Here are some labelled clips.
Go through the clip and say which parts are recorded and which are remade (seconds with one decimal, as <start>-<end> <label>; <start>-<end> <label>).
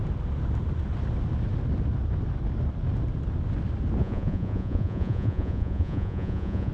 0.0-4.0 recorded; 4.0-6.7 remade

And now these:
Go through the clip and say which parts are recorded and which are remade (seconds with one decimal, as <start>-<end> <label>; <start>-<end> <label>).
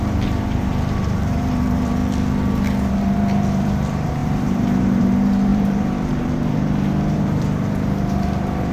0.0-2.0 remade; 2.0-2.9 recorded; 2.9-8.7 remade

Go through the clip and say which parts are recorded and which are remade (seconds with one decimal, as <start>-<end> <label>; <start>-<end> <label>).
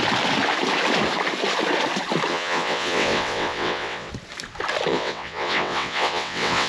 0.0-2.3 recorded; 2.3-4.1 remade; 4.1-4.9 recorded; 4.9-6.7 remade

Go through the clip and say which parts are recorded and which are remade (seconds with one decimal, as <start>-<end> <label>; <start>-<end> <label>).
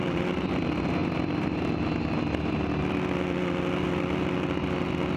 0.0-5.2 recorded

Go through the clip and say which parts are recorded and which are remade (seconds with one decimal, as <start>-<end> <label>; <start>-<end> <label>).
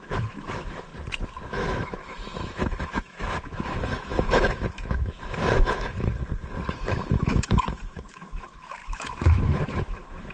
0.0-0.9 remade; 0.9-1.5 recorded; 1.5-6.1 remade; 6.1-6.7 recorded; 6.7-10.3 remade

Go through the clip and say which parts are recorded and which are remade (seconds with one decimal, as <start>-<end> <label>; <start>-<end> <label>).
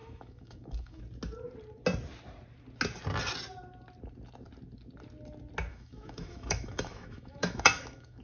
0.0-1.0 remade; 1.0-5.7 recorded; 5.7-8.2 remade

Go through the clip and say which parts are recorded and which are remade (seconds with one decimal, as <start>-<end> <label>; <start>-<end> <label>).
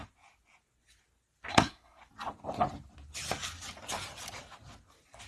0.0-1.5 recorded; 1.5-2.0 remade; 2.0-5.3 recorded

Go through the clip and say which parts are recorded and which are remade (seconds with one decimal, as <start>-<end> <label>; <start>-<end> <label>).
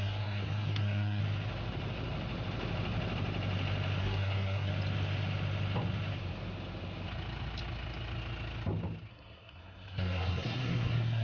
0.0-1.2 remade; 1.2-4.0 recorded; 4.0-4.7 remade; 4.7-9.1 recorded; 9.1-11.2 remade